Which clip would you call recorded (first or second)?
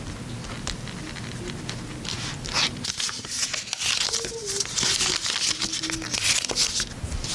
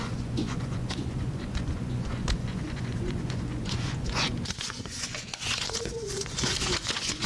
first